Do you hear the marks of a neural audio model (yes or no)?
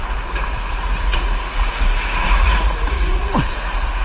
yes